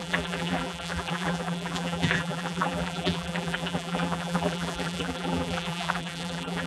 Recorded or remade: remade